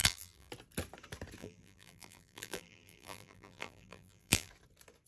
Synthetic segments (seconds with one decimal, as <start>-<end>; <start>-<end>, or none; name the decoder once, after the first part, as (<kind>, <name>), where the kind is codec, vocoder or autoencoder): 0.0-0.5 (vocoder, BigVGAN v2); 1.4-4.5